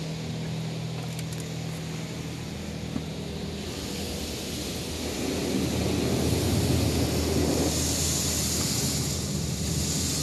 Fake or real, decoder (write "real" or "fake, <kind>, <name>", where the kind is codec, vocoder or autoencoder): real